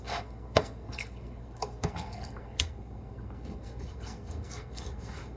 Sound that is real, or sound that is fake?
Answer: fake